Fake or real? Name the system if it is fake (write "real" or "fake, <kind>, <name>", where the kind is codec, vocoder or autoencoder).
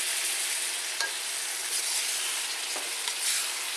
real